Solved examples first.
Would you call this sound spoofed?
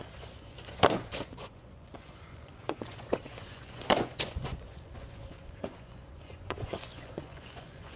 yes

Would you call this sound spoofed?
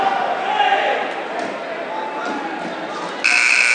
no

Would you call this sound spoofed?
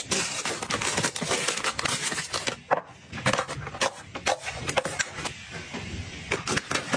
no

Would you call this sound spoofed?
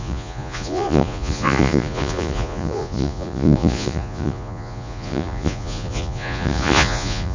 yes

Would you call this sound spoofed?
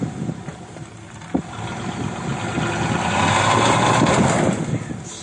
no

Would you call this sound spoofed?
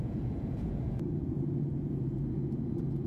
yes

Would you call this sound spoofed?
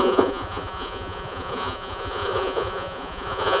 yes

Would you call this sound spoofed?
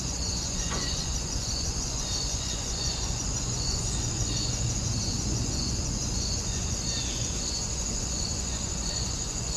yes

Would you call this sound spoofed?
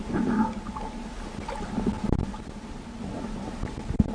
no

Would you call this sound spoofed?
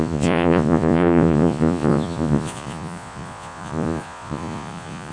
yes